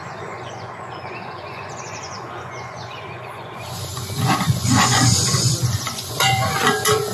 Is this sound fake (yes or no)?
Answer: yes